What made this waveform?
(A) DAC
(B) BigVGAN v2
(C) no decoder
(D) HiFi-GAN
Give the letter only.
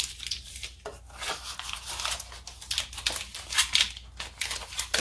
C